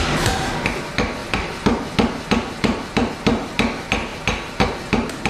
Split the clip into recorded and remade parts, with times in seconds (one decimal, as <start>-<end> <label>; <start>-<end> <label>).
0.0-1.2 recorded; 1.2-3.1 remade; 3.1-5.3 recorded